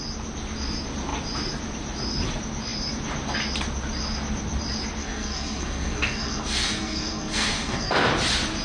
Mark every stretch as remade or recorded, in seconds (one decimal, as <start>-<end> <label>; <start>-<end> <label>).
0.0-5.0 recorded; 5.0-8.1 remade; 8.1-8.6 recorded